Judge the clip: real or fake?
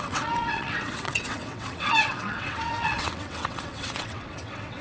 fake